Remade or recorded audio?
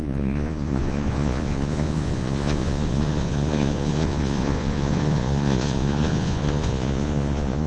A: remade